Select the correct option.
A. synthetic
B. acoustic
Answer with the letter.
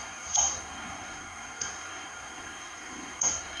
A